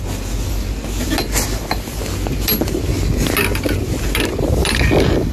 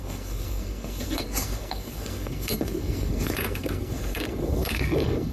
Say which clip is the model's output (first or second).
second